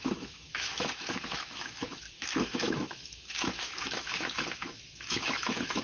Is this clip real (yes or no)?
no